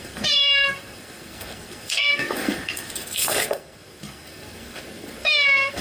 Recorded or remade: remade